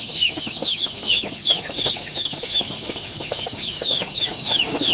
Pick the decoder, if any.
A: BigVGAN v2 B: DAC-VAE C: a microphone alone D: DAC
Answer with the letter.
B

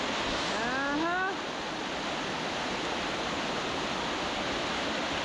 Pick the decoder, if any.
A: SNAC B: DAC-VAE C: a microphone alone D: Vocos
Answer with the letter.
C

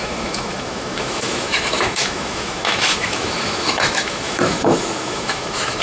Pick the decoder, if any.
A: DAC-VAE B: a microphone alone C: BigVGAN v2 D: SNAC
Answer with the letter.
A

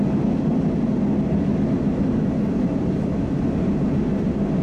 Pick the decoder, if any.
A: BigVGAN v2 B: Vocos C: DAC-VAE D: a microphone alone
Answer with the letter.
D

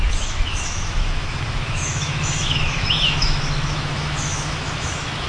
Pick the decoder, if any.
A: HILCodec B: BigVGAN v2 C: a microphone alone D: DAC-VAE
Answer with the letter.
D